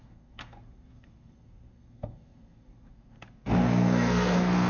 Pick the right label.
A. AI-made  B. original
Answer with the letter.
A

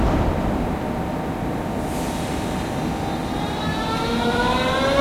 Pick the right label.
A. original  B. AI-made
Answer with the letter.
A